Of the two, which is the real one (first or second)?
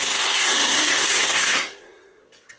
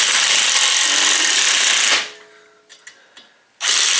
second